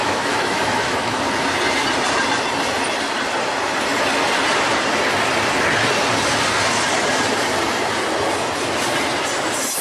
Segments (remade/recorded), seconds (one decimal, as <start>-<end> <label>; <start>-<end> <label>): 0.0-1.2 remade; 1.2-9.8 recorded